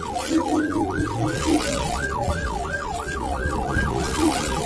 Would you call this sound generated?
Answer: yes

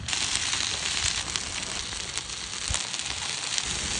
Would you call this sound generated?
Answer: no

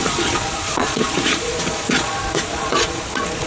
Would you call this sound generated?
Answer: yes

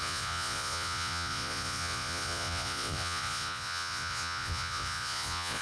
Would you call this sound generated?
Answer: yes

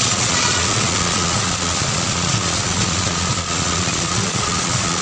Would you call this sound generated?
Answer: yes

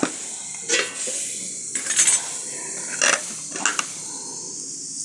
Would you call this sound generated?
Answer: no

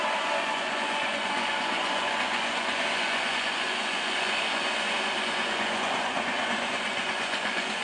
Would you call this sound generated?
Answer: yes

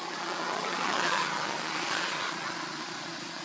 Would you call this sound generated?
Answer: yes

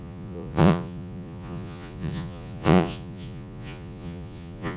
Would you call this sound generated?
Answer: yes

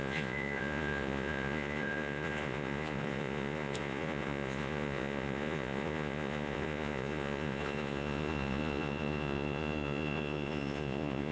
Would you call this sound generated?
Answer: yes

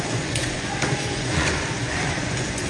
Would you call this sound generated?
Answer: yes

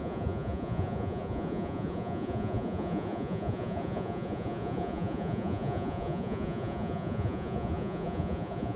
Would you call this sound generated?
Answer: yes